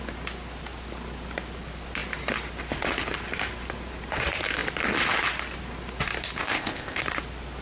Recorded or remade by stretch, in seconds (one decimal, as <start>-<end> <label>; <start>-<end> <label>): 0.0-6.4 recorded; 6.4-7.0 remade; 7.0-7.6 recorded